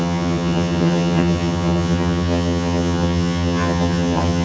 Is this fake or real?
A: fake